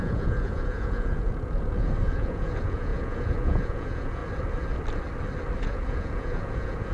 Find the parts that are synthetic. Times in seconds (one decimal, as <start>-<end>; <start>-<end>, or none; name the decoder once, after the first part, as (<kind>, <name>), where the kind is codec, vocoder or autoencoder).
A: 0.0-4.2 (vocoder, Vocos); 5.6-6.9